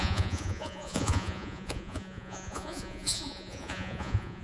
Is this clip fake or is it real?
fake